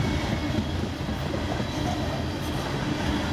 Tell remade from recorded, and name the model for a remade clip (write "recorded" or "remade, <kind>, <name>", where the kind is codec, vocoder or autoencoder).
recorded